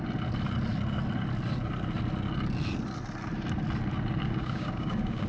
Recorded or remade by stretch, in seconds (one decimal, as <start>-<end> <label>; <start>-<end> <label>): 0.0-4.2 recorded; 4.2-5.3 remade